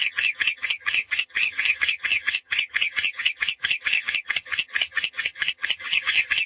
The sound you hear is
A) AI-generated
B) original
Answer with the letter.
A